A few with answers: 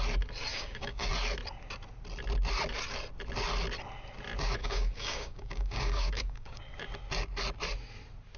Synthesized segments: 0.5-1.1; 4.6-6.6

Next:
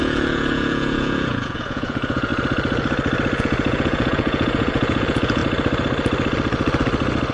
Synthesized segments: 0.0-2.3; 3.4-5.4